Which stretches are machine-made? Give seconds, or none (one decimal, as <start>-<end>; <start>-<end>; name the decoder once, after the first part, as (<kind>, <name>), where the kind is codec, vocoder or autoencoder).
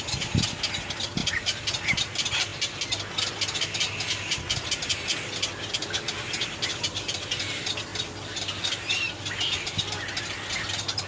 none